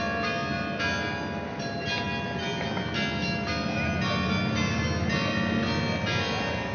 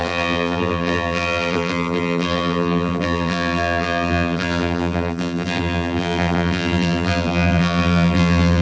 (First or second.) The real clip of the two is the first